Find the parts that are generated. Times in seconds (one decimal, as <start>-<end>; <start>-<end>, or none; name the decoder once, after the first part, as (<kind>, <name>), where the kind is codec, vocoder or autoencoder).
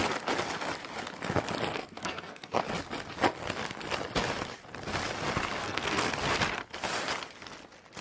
1.7-2.6 (codec, SNAC); 5.6-6.1